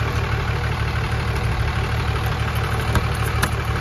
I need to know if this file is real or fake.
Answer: real